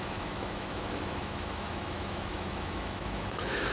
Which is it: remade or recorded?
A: remade